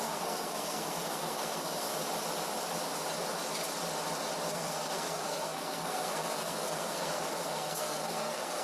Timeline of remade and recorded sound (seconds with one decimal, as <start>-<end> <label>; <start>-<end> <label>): 0.0-1.9 remade; 1.9-4.5 recorded; 4.5-8.6 remade